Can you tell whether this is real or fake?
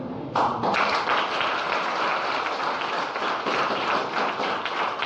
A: real